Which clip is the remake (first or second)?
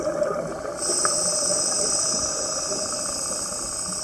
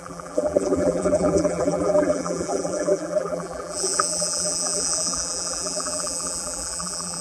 second